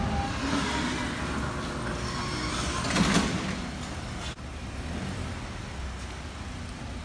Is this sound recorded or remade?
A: recorded